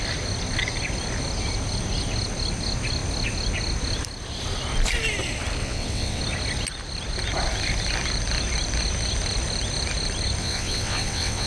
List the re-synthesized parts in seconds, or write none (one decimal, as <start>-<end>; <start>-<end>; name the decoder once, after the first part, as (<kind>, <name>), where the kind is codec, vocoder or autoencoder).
5.6-6.2 (vocoder, WaveNeXt); 10.4-11.5